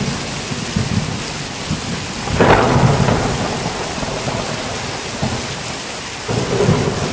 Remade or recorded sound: recorded